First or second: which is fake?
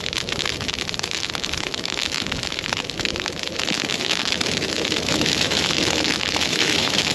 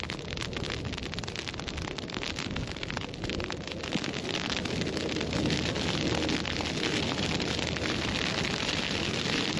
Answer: first